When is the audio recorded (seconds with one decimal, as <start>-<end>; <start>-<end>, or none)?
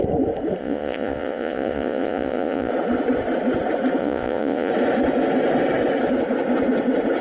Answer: 0.0-0.6; 2.7-4.0; 4.7-7.2